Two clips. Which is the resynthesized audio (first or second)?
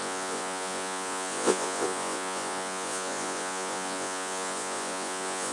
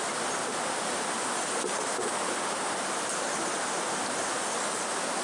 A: first